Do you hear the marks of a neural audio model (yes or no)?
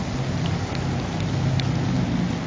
no